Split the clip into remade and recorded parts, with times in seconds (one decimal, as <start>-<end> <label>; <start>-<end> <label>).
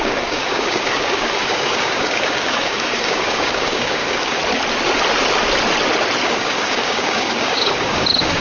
0.0-4.4 remade; 4.4-6.2 recorded; 6.2-8.4 remade